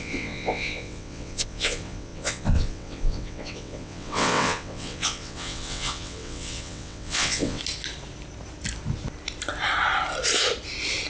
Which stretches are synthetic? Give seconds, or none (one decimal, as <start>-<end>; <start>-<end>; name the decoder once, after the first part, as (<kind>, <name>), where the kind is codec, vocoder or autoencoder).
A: 0.0-7.6 (vocoder, WaveNeXt)